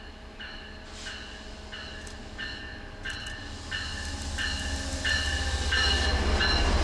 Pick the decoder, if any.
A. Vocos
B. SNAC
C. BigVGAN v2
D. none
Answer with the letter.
D